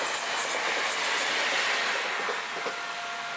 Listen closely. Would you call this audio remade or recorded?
recorded